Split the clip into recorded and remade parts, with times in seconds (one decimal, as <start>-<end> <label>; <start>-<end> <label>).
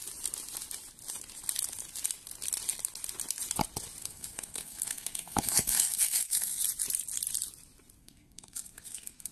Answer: 0.0-4.0 recorded; 4.0-6.6 remade; 6.6-8.0 recorded; 8.0-9.3 remade